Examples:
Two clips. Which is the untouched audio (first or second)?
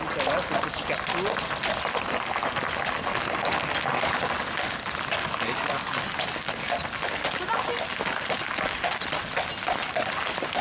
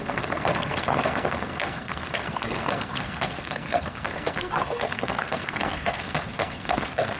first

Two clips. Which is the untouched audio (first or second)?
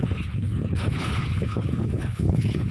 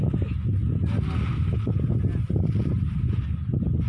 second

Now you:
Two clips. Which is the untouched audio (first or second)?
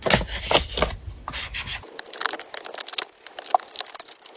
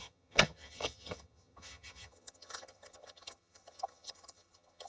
first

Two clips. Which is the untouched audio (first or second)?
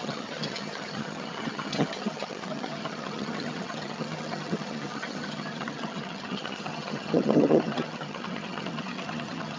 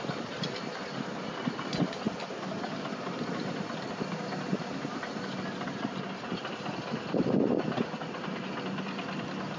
second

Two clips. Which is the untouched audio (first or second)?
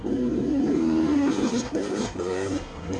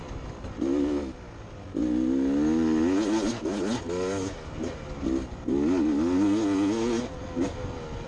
second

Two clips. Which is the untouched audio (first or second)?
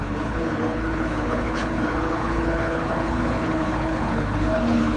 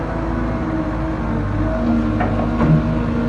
second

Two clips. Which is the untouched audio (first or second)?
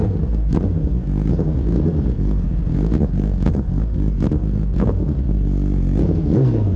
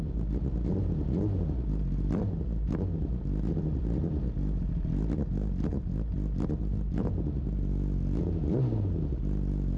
second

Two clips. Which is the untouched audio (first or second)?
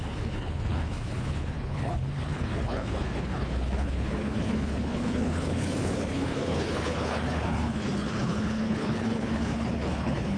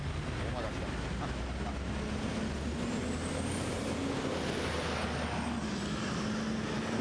second